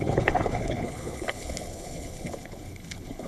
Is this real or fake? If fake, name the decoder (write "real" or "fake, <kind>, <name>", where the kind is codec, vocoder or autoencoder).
fake, codec, HILCodec